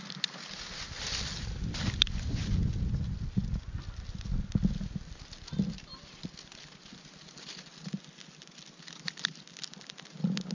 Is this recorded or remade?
recorded